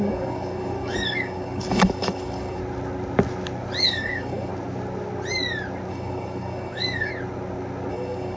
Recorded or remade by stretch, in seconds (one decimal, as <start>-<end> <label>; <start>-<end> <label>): 0.0-2.6 remade; 2.6-3.8 recorded; 3.8-4.5 remade; 4.5-5.9 recorded; 5.9-7.1 remade; 7.1-7.9 recorded; 7.9-8.4 remade